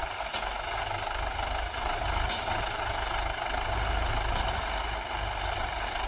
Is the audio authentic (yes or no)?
yes